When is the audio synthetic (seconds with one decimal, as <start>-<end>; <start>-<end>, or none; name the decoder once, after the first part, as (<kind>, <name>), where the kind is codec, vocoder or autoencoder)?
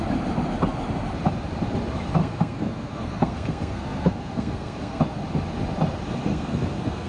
2.2-5.0 (codec, SNAC); 6.3-7.1